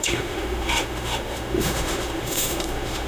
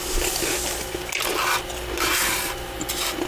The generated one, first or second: first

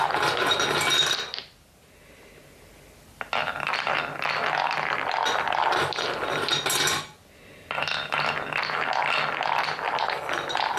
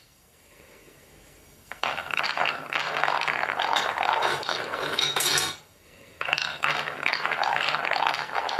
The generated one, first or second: second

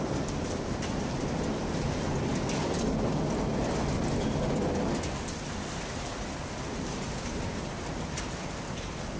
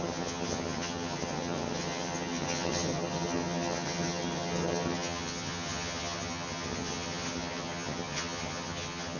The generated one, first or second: second